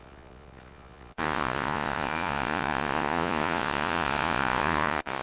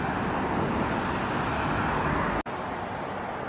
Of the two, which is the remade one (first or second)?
first